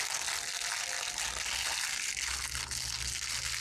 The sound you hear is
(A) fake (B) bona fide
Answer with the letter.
B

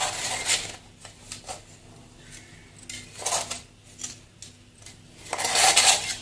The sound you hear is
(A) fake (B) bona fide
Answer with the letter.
B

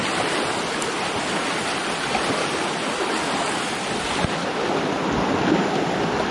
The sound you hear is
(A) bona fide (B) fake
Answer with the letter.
A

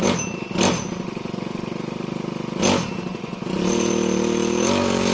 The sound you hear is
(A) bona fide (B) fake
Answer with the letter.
A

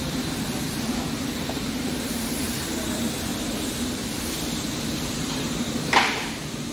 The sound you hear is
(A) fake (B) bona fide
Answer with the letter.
A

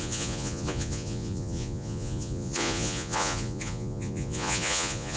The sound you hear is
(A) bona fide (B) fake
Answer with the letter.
B